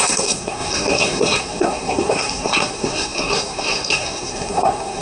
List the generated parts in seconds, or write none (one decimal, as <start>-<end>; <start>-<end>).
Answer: 0.0-5.0